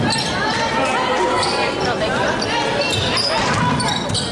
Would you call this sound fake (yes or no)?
no